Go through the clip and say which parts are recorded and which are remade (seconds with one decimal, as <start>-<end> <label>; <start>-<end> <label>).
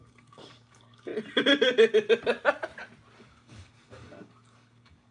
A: 0.0-1.1 remade; 1.1-3.2 recorded; 3.2-5.1 remade